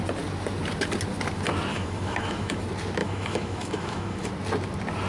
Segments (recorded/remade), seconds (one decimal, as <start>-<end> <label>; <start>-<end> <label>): 0.0-1.7 recorded; 1.7-2.6 remade; 2.6-3.0 recorded; 3.0-4.3 remade; 4.3-5.1 recorded